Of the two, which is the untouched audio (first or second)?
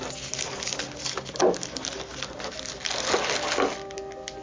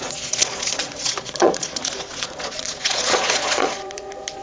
first